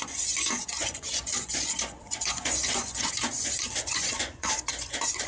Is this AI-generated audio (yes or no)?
yes